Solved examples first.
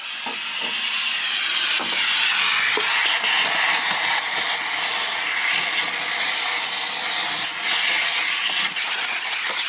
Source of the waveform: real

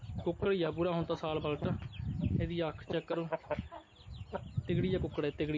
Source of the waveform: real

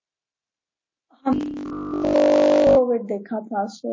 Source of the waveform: real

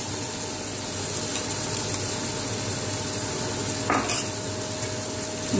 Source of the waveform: real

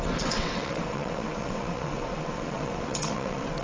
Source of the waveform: fake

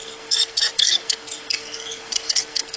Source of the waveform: fake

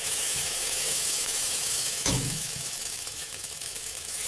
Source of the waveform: fake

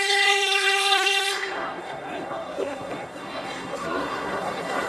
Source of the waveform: fake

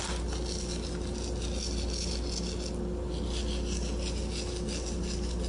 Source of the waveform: real